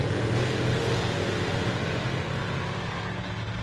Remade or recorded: recorded